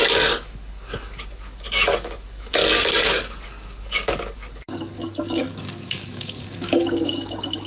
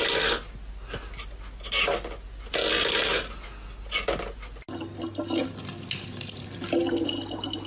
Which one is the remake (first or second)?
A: first